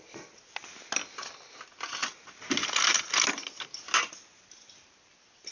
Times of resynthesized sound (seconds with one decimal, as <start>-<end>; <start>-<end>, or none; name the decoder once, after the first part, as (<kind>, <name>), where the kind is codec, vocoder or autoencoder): none